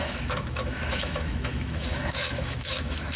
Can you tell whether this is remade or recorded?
remade